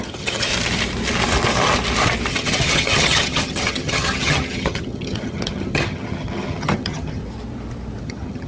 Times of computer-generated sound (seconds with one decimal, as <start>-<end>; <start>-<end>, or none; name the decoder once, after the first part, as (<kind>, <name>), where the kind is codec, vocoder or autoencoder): 0.0-0.5 (vocoder, HiFi-GAN); 2.3-7.2; 8.0-8.5